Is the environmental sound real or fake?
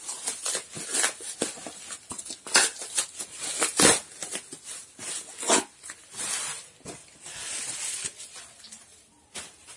real